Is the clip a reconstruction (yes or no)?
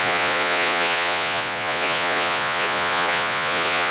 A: yes